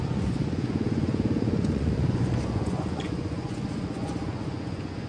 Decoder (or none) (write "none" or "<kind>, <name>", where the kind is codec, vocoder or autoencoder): vocoder, Vocos